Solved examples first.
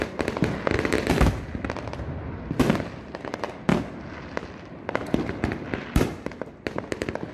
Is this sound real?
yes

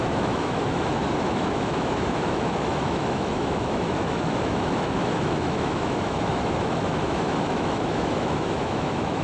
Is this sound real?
no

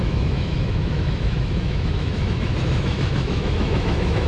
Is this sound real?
no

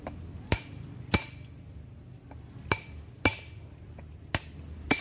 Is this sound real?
yes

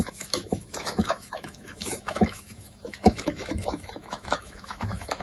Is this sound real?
no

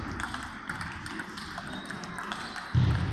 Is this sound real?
yes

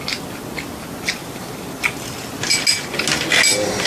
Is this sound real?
yes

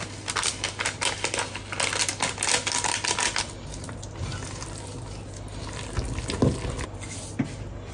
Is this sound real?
yes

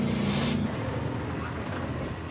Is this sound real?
yes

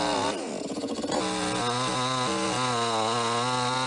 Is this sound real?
yes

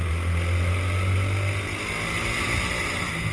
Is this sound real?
yes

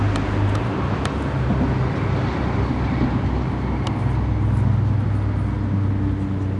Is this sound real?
yes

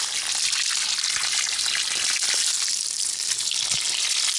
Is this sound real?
yes